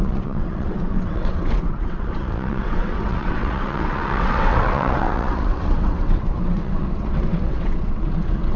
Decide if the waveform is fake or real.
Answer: fake